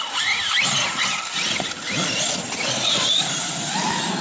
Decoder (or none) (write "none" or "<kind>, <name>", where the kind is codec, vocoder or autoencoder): none